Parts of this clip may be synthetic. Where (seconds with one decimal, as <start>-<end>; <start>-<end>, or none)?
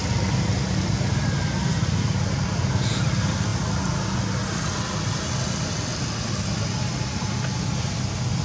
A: none